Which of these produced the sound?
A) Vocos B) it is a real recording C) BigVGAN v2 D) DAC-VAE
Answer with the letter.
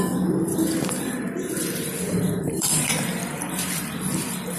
C